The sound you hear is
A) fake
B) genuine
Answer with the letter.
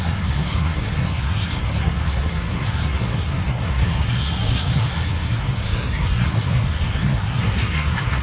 A